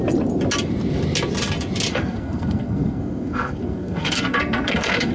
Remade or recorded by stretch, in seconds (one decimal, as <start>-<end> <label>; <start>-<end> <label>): 0.0-1.9 recorded; 1.9-5.1 remade